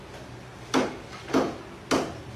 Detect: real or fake real